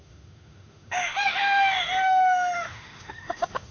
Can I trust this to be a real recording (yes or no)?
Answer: no